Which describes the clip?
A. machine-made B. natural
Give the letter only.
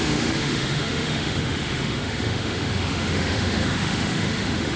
A